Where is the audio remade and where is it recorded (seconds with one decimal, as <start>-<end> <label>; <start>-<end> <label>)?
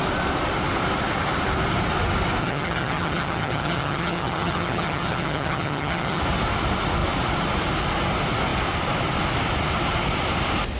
0.0-2.4 recorded; 2.4-6.2 remade; 6.2-10.8 recorded